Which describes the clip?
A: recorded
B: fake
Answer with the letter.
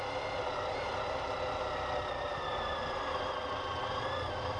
A